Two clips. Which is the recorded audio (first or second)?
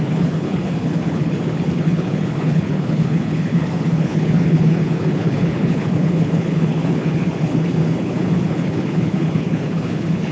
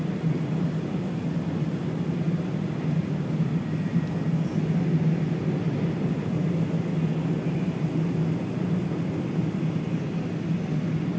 second